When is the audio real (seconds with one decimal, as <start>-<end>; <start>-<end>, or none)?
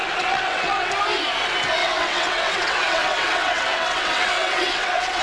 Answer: 0.9-1.8